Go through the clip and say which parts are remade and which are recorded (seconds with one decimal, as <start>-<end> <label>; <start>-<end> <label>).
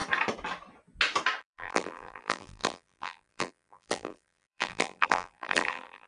0.0-1.4 recorded; 1.4-6.1 remade